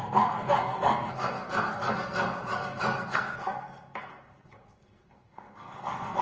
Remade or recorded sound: remade